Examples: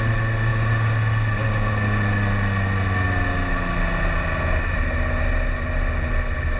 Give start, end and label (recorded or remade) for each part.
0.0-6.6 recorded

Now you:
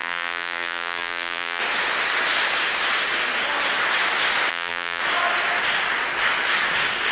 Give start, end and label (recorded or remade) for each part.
0.0-1.6 remade; 1.6-4.5 recorded; 4.5-5.0 remade; 5.0-7.1 recorded

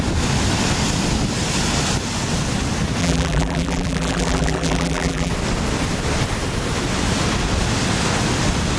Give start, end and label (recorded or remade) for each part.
0.0-3.0 recorded; 3.0-5.3 remade; 5.3-8.8 recorded